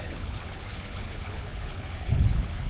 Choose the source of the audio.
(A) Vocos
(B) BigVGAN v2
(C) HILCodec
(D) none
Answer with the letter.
C